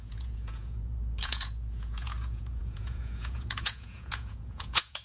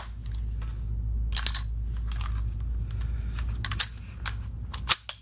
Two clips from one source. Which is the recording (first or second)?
second